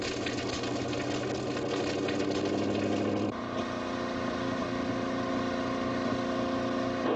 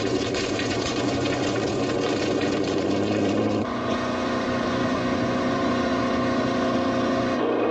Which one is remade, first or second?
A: second